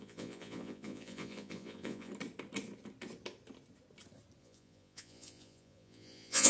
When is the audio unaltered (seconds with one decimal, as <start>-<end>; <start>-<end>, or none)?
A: 2.1-4.4